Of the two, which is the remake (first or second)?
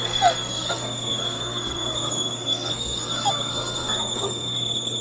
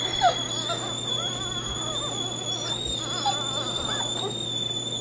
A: first